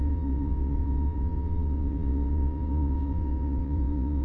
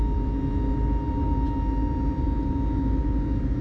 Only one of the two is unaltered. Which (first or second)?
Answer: second